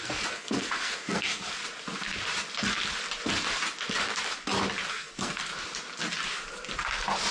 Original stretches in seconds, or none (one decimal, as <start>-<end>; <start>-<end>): 1.6-4.9; 5.5-7.3